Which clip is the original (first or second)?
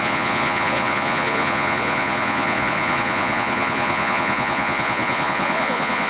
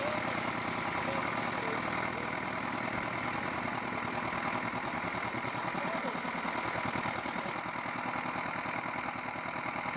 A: second